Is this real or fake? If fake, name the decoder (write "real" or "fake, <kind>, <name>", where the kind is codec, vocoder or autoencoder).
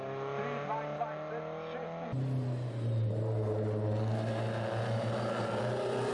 real